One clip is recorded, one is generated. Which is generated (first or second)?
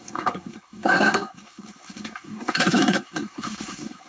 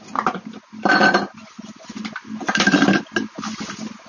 first